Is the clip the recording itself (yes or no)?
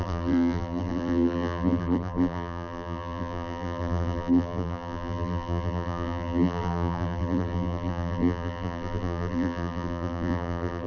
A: no